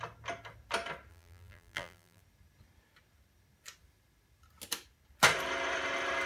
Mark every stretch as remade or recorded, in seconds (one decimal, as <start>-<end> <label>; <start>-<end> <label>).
0.0-1.1 recorded; 1.1-2.2 remade; 2.2-6.3 recorded